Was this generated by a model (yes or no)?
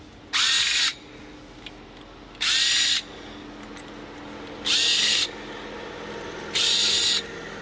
no